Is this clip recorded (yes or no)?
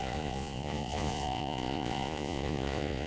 no